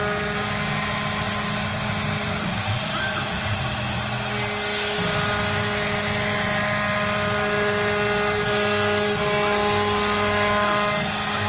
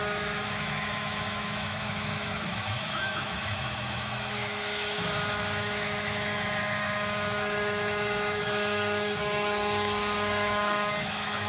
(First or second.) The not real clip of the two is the second